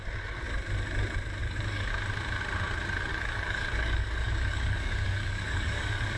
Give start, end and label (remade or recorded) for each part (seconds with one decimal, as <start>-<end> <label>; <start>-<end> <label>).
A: 0.0-1.4 recorded; 1.4-1.9 remade; 1.9-3.1 recorded; 3.1-6.2 remade